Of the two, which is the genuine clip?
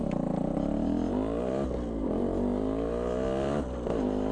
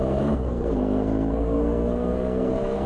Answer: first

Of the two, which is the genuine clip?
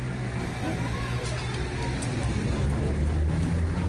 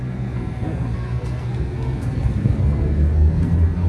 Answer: first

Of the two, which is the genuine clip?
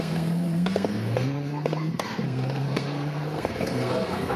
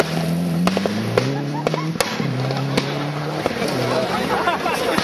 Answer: second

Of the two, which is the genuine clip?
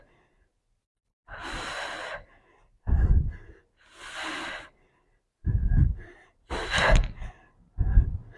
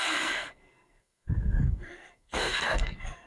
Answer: first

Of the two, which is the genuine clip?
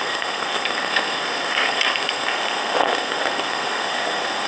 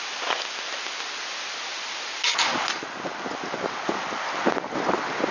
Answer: second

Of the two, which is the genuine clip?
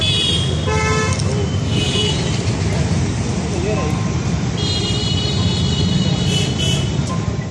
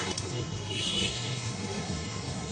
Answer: first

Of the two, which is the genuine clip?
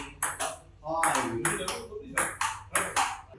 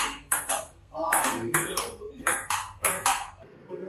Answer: first